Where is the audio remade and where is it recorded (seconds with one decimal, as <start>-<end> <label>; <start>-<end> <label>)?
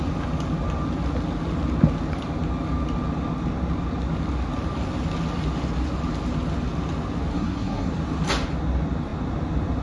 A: 0.0-7.3 recorded; 7.3-7.9 remade; 7.9-9.8 recorded